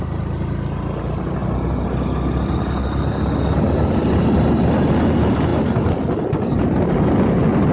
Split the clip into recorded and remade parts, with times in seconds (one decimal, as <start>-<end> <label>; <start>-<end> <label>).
0.0-7.7 recorded